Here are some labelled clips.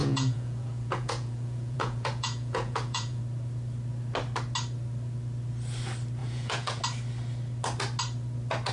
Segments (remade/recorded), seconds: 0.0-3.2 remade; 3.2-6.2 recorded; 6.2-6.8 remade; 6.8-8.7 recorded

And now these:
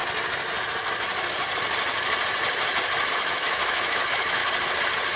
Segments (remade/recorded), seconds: 0.0-3.1 recorded; 3.1-4.4 remade; 4.4-5.2 recorded

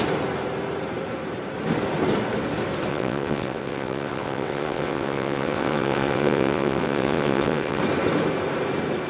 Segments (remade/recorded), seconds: 0.0-2.9 recorded; 2.9-7.8 remade; 7.8-9.1 recorded